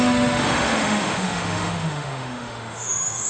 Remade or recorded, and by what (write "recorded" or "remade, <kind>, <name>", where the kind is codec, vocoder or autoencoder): remade, autoencoder, DAC-VAE